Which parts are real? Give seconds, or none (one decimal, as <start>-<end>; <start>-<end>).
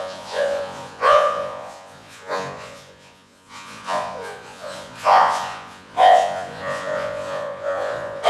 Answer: none